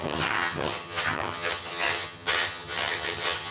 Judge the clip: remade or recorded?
remade